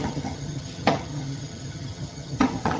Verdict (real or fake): fake